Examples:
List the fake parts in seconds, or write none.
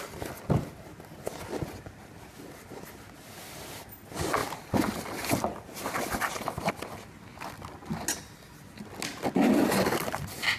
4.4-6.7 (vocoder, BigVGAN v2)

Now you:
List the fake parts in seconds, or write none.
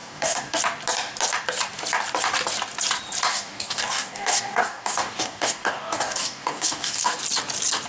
0.0-0.6 (codec, DAC); 3.3-7.2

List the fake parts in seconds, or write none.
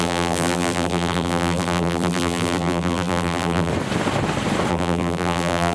0.0-3.7 (vocoder, BigVGAN v2); 4.7-5.7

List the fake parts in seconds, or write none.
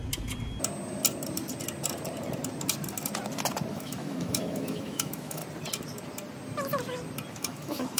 3.7-5.4 (autoencoder, DAC-VAE); 7.3-8.0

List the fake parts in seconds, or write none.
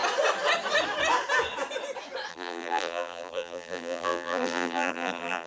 2.3-5.5 (vocoder, BigVGAN v2)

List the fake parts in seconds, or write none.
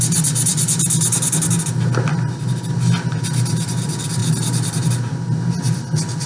none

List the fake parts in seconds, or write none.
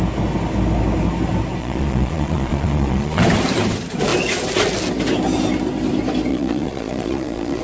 1.6-3.2 (vocoder, Vocos); 6.3-7.6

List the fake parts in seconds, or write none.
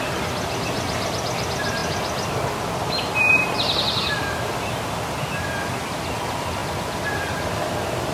none